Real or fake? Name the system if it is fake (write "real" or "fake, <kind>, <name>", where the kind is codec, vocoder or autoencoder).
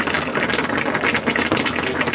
real